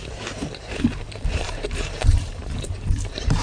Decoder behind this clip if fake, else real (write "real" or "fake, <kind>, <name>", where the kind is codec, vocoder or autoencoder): fake, vocoder, BigVGAN v2